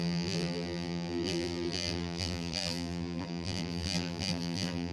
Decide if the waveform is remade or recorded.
remade